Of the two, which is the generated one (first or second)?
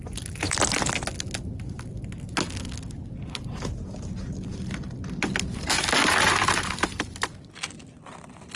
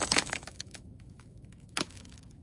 second